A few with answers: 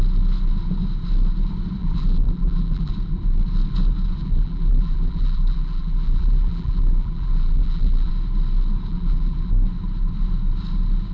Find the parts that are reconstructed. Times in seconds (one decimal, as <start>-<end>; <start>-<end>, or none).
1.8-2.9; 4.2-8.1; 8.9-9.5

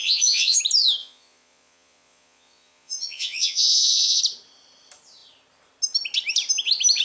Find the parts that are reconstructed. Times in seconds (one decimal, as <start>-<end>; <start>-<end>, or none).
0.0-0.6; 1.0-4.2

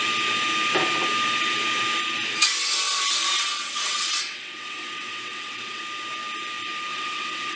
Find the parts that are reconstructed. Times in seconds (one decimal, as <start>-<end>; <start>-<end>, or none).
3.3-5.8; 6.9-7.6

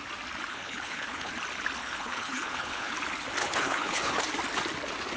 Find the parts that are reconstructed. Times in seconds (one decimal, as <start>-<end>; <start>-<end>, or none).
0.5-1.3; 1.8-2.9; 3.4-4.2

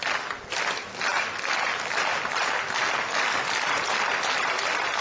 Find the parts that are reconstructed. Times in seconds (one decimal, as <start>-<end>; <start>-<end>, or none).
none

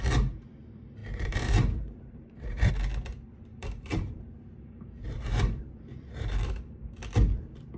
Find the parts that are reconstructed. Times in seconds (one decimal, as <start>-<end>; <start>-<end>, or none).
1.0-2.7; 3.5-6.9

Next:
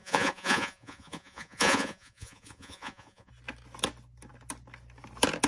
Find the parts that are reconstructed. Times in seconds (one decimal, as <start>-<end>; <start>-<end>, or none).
0.0-3.3

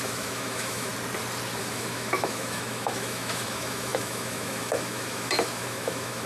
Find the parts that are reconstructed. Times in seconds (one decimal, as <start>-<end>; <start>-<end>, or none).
0.0-0.9; 1.6-6.3